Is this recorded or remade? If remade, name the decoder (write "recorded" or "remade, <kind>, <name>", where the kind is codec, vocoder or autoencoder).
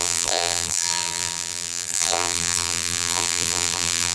remade, vocoder, BigVGAN v2